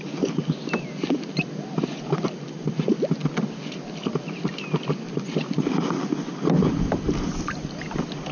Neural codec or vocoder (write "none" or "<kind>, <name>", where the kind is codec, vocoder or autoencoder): none